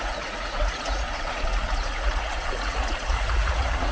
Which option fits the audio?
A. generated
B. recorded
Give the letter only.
A